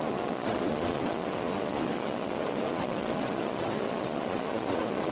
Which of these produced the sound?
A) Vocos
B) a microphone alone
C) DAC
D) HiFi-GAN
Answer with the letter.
A